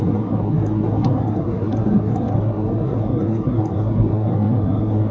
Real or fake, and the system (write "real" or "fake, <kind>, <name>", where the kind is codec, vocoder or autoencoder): fake, codec, SNAC